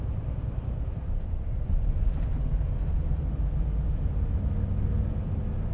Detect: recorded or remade recorded